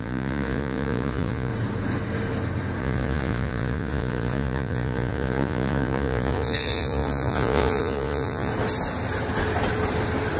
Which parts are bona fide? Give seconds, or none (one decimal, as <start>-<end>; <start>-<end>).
1.5-2.8; 8.5-10.4